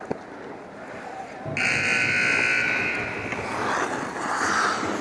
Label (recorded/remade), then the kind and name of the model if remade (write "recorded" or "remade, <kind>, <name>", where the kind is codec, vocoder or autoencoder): recorded